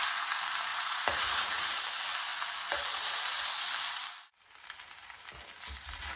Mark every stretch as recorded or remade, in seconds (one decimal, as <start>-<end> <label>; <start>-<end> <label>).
0.0-0.7 recorded; 0.7-1.8 remade; 1.8-6.2 recorded